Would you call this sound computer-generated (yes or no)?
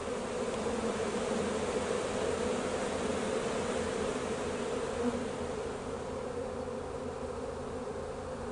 no